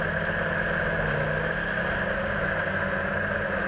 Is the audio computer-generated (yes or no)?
no